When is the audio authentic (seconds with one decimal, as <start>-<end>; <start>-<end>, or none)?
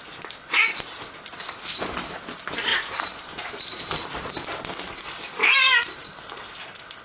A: 0.0-2.7; 3.8-5.4